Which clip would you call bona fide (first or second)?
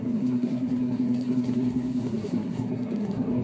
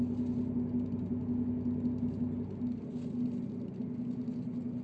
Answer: second